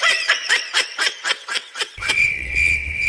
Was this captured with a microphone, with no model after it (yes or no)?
no